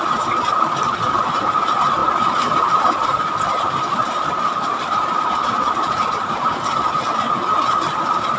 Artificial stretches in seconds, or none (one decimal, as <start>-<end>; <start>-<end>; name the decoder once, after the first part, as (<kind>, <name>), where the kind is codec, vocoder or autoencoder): 0.9-1.6 (vocoder, BigVGAN v2); 2.0-7.0